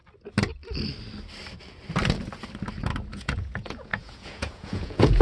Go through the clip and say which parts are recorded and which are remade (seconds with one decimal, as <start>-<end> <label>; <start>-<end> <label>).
0.0-3.1 recorded; 3.1-5.2 remade